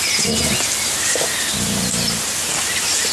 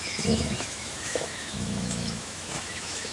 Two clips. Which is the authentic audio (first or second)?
first